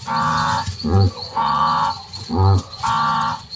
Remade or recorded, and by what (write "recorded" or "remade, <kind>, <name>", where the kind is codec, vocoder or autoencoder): remade, vocoder, Vocos